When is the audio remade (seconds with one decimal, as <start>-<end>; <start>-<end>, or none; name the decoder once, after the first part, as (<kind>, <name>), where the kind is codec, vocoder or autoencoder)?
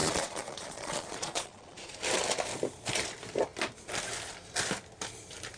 0.0-2.0 (vocoder, Vocos)